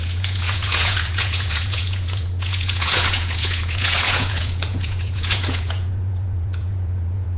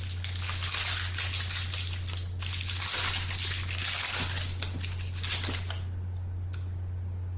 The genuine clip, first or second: second